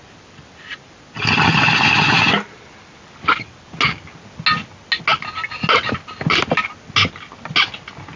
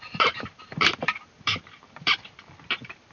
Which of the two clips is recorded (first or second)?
first